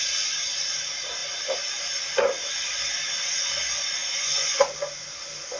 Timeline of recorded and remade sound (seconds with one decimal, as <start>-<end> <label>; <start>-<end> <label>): 0.0-4.0 recorded; 4.0-4.8 remade; 4.8-5.6 recorded